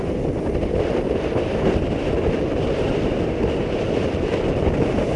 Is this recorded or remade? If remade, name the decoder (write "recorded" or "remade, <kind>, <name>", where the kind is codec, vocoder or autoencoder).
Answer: recorded